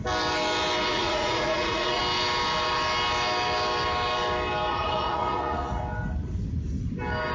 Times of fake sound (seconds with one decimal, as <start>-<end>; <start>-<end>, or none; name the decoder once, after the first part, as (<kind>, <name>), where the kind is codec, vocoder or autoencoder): 0.9-2.0 (vocoder, Vocos); 4.7-5.8